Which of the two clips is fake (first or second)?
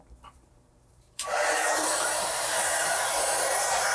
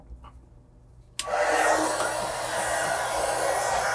first